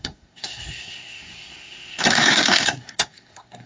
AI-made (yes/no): yes